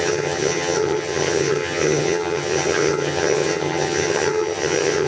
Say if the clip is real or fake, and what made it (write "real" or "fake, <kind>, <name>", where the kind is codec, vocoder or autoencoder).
fake, vocoder, HiFi-GAN